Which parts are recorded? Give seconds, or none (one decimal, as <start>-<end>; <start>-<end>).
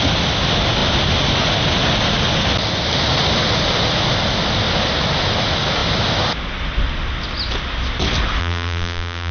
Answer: 0.0-8.4